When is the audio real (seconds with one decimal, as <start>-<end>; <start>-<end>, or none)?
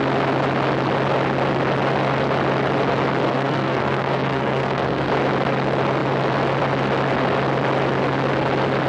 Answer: 0.0-3.3; 5.1-8.9